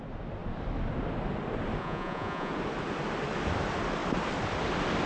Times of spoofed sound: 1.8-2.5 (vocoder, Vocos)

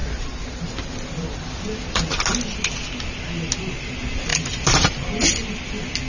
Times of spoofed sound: 0.0-0.7 (vocoder, BigVGAN v2); 4.3-5.1

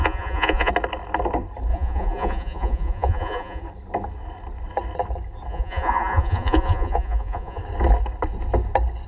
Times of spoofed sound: 0.0-0.7 (vocoder, Vocos); 1.7-3.6; 5.5-7.6

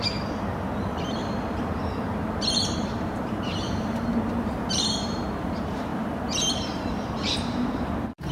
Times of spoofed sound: 0.0-8.3 (vocoder, BigVGAN v2)

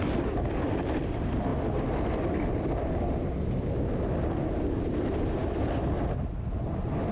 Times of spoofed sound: none

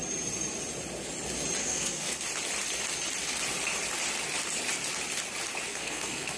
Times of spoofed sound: 1.6-2.2 (codec, SNAC); 5.7-6.4

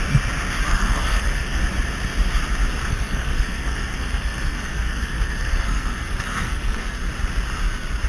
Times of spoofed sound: 0.7-1.6 (codec, SNAC); 2.9-7.0

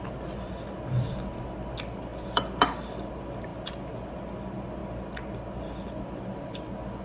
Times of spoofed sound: none